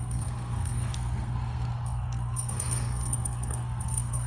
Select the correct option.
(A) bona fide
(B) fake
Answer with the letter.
B